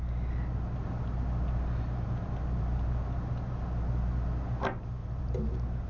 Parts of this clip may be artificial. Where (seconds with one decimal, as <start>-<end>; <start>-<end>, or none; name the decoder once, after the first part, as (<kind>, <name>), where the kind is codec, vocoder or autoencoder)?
5.0-5.9 (vocoder, BigVGAN v2)

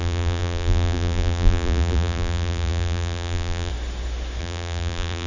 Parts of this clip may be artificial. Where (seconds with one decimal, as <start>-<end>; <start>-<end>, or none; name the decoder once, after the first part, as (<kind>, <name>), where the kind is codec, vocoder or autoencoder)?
0.0-3.7 (vocoder, BigVGAN v2); 4.4-5.3

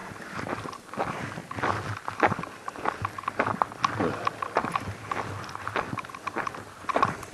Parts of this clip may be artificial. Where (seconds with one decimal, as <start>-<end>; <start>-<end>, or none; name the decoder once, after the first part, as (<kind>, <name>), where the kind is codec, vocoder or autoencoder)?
0.0-0.7 (vocoder, BigVGAN v2)

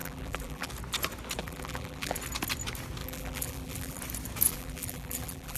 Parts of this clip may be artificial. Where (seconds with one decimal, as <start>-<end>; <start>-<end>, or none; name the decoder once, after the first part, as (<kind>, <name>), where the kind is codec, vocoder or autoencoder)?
0.0-0.7 (vocoder, BigVGAN v2); 1.4-2.2; 3.0-4.0; 4.5-5.6

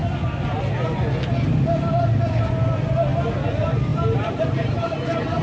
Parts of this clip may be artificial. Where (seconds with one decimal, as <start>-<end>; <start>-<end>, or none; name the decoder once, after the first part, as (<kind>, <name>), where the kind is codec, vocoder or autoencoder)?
3.9-5.4 (vocoder, BigVGAN v2)

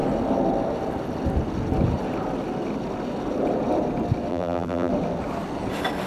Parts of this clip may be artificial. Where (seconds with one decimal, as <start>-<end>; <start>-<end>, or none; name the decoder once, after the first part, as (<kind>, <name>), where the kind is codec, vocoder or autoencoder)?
4.3-4.9 (vocoder, BigVGAN v2)

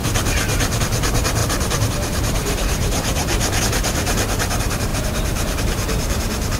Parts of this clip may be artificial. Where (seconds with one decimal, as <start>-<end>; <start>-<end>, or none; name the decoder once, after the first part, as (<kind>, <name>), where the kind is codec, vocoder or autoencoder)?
0.0-6.6 (vocoder, BigVGAN v2)